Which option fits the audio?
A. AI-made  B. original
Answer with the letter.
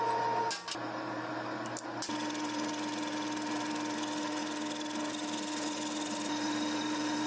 B